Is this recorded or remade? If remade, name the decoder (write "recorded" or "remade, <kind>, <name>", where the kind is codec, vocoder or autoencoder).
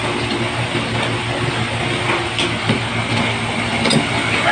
recorded